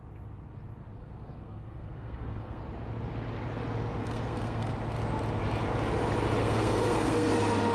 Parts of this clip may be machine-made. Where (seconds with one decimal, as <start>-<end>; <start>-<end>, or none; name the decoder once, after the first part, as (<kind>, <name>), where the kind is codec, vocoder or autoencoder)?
1.0-2.6 (codec, SNAC); 4.0-4.7; 6.4-7.3